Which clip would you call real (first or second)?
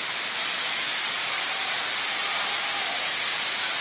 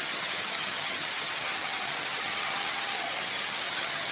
first